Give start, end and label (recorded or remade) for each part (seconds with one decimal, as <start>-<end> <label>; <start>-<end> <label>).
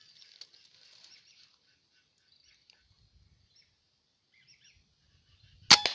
0.0-5.9 recorded